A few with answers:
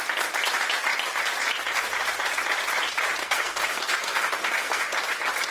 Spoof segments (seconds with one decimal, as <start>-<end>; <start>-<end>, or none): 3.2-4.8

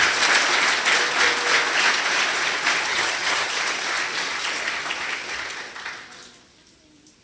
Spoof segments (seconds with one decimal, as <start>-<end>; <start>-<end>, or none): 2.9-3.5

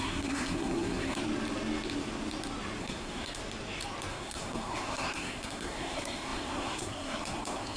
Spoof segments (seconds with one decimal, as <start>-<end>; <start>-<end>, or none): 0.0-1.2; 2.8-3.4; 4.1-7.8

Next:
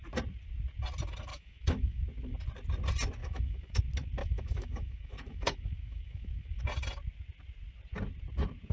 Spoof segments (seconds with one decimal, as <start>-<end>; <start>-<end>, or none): 1.3-2.0; 3.2-3.8; 4.2-6.6

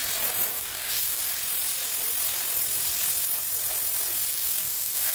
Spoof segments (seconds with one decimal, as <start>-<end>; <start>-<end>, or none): 0.5-1.2; 4.3-5.1

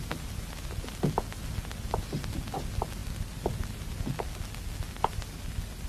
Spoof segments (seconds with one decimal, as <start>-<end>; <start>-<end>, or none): none